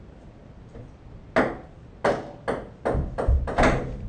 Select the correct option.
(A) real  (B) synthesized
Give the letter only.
A